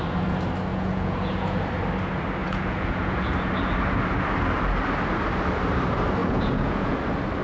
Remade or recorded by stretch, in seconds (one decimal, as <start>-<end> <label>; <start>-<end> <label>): 0.0-0.7 recorded; 0.7-1.6 remade; 1.6-2.4 recorded; 2.4-3.5 remade; 3.5-6.2 recorded; 6.2-7.0 remade; 7.0-7.4 recorded

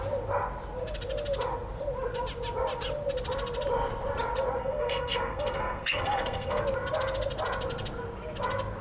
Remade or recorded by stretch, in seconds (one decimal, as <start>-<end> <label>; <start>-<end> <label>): 0.0-4.6 recorded; 4.6-6.6 remade; 6.6-8.8 recorded

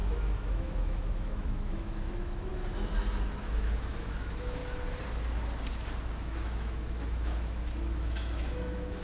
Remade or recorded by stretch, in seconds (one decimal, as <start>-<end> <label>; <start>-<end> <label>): 0.0-2.5 remade; 2.5-3.4 recorded; 3.4-4.6 remade; 4.6-6.1 recorded; 6.1-9.0 remade

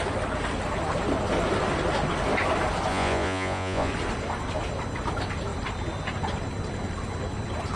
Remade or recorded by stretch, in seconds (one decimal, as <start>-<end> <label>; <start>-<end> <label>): 0.0-2.9 recorded; 2.9-3.9 remade; 3.9-7.8 recorded

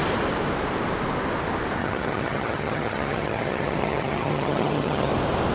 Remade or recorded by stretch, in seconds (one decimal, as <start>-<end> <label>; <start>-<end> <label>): 0.0-1.8 recorded; 1.8-5.1 remade; 5.1-5.5 recorded

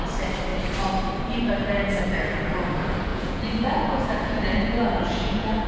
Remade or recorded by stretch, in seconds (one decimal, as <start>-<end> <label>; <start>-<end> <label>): 0.0-3.1 recorded; 3.1-5.7 remade

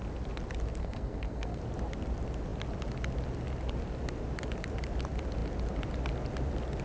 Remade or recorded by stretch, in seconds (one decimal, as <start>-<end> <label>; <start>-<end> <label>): 0.0-0.8 recorded; 0.8-1.6 remade; 1.6-6.8 recorded

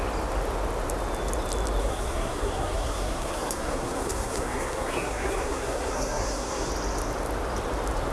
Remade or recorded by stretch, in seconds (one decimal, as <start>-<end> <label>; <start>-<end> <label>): 0.0-1.8 recorded; 1.8-6.7 remade; 6.7-8.1 recorded